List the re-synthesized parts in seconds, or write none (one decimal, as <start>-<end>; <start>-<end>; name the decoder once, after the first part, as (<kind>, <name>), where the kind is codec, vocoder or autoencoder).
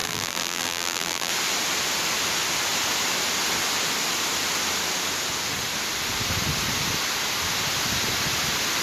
0.0-1.3 (vocoder, BigVGAN v2)